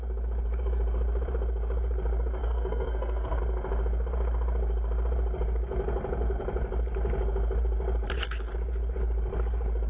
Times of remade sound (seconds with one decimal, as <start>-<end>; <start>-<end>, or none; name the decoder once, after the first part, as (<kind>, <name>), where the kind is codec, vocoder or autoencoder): 2.4-3.4 (codec, SNAC)